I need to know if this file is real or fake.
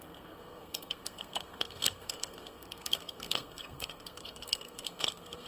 fake